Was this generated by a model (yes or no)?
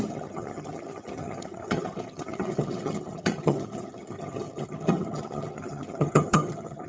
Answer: yes